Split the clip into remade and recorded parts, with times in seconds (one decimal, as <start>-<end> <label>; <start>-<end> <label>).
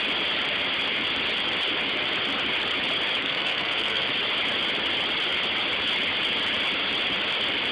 0.0-3.2 recorded; 3.2-4.1 remade; 4.1-7.7 recorded